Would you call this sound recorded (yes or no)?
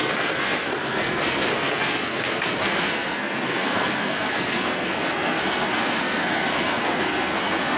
no